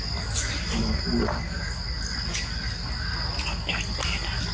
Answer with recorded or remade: recorded